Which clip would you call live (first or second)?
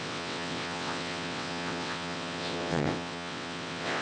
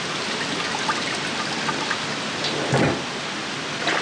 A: second